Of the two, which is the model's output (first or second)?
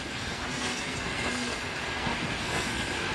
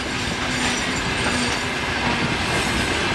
first